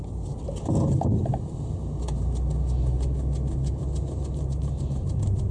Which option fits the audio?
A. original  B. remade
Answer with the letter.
A